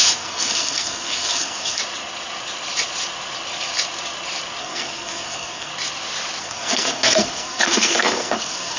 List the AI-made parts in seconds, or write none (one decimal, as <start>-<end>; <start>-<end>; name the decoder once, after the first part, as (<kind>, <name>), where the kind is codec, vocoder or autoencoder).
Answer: 0.0-1.8 (codec, SNAC); 4.6-5.7; 6.4-8.8